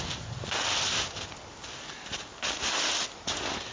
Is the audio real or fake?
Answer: real